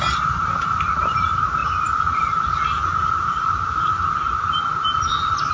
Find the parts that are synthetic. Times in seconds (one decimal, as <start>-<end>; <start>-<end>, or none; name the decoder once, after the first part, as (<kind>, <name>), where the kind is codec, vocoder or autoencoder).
4.7-5.5 (vocoder, BigVGAN v2)